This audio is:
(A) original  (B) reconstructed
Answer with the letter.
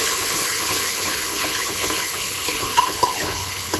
B